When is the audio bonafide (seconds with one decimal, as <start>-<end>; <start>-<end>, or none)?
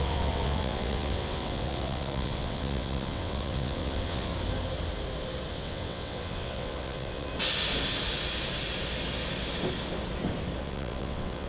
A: 4.3-5.5; 7.3-10.6